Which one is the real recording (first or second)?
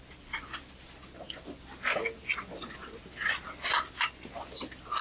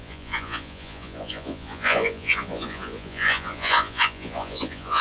first